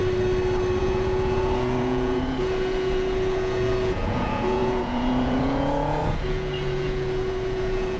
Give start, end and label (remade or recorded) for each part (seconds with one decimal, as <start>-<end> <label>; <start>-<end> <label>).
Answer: 0.0-0.8 recorded; 0.8-8.0 remade